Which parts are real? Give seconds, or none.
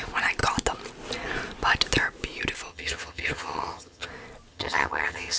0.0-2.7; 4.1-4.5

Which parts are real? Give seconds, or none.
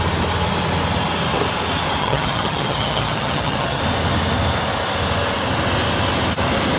0.0-2.0; 3.8-6.8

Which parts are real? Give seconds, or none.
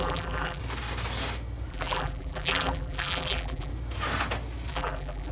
0.6-1.7; 3.7-4.7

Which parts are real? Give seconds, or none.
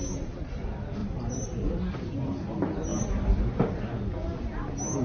0.0-1.0; 2.5-2.9; 3.6-5.0